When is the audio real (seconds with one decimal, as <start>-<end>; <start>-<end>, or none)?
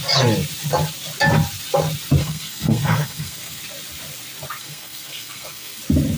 0.0-2.2; 3.6-4.6; 5.8-6.2